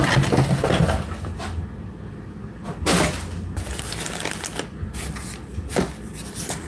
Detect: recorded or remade recorded